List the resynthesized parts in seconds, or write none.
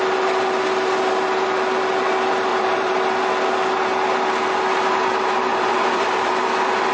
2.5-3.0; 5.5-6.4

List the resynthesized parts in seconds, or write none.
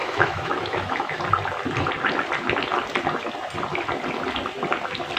0.0-1.2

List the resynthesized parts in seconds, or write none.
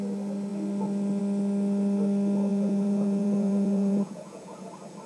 2.5-4.6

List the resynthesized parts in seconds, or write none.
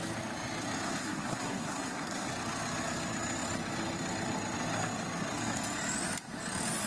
1.0-2.3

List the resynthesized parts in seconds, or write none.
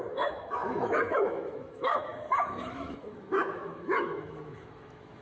0.0-5.2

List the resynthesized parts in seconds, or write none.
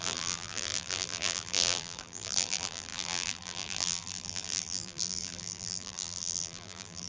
0.0-7.1